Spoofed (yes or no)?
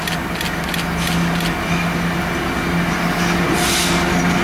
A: no